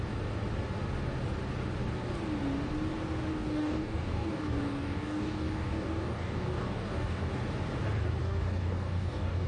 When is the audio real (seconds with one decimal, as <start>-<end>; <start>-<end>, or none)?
0.0-3.3; 7.3-8.2